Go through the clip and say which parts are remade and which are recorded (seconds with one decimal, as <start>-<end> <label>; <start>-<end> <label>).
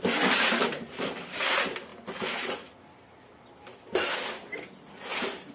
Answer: 0.0-5.5 recorded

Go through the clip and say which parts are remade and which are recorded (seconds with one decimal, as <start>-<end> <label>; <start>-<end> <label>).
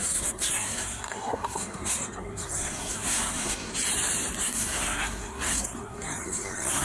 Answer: 0.0-3.7 remade; 3.7-4.4 recorded; 4.4-6.8 remade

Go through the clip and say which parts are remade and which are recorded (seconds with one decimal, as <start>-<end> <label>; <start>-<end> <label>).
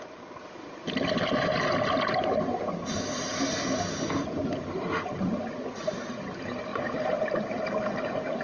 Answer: 0.0-8.4 recorded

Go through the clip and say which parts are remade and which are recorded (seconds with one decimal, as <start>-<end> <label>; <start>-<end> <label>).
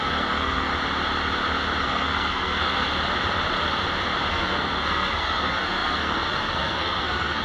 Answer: 0.0-0.7 remade; 0.7-1.8 recorded; 1.8-2.9 remade; 2.9-4.3 recorded; 4.3-7.4 remade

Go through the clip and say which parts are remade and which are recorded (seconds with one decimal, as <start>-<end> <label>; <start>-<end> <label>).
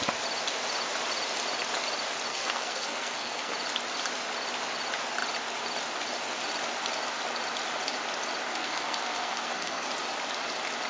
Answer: 0.0-2.3 recorded; 2.3-3.5 remade; 3.5-8.5 recorded; 8.5-9.9 remade; 9.9-10.9 recorded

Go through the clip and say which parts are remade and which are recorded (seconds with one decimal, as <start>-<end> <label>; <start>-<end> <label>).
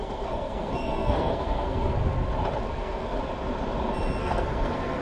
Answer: 0.0-2.0 remade; 2.0-2.7 recorded; 2.7-3.2 remade; 3.2-4.2 recorded; 4.2-5.0 remade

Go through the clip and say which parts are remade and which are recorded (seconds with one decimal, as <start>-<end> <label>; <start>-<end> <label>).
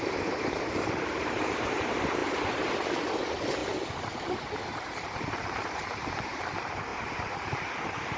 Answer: 0.0-8.2 remade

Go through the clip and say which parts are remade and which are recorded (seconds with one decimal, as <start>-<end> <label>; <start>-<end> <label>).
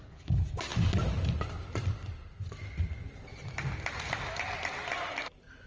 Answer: 0.0-5.7 recorded